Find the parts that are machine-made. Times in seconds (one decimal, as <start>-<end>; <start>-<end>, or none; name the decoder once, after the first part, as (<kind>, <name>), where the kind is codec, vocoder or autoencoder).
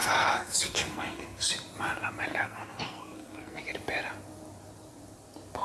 0.0-1.5 (codec, SNAC); 2.3-3.6